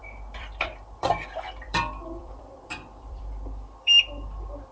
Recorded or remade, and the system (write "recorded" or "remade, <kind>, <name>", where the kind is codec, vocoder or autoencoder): remade, vocoder, BigVGAN v2